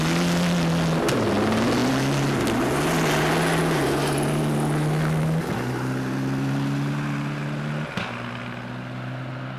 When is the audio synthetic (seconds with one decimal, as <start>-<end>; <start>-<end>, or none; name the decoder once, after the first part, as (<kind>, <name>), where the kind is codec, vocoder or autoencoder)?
none